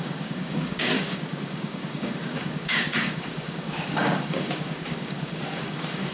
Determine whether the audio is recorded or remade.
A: remade